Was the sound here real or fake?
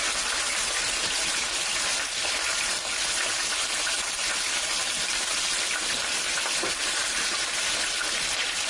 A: real